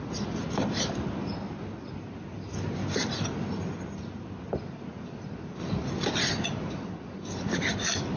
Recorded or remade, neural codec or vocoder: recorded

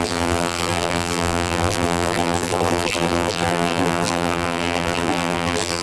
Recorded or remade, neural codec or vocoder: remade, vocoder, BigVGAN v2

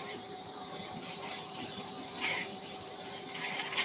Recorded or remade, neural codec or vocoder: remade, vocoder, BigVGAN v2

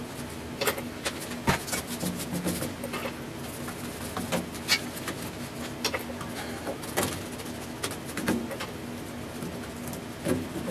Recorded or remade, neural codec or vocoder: recorded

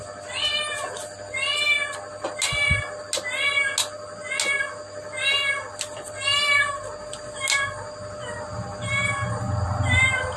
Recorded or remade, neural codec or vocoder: recorded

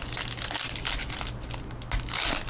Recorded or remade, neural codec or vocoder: recorded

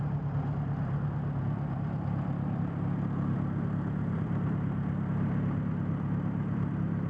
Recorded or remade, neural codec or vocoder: remade, vocoder, BigVGAN v2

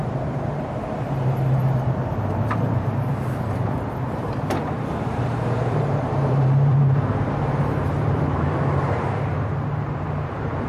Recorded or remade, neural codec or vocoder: remade, vocoder, BigVGAN v2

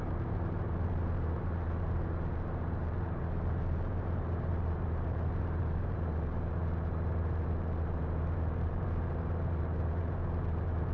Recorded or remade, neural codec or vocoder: remade, vocoder, BigVGAN v2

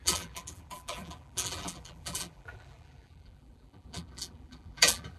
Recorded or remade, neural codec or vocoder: remade, vocoder, BigVGAN v2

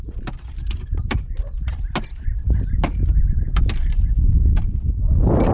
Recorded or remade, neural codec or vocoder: recorded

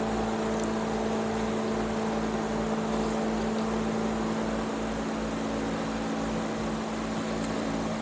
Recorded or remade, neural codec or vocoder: recorded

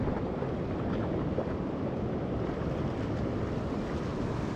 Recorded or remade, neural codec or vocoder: remade, vocoder, BigVGAN v2